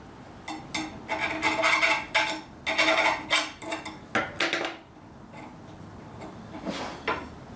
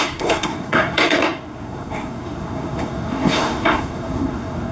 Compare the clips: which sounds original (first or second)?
first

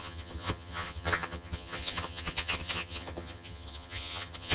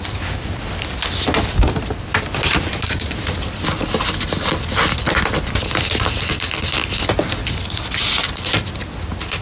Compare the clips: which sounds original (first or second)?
second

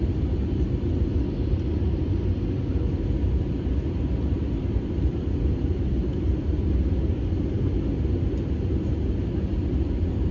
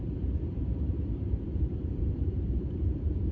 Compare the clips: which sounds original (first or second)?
first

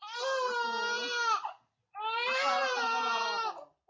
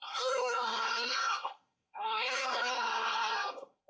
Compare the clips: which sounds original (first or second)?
first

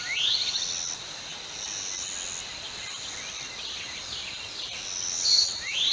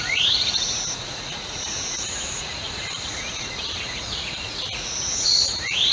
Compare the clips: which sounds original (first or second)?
first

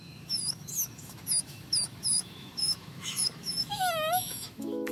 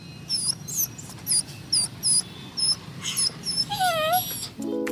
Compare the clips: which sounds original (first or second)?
second